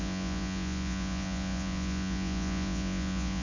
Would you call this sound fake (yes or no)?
yes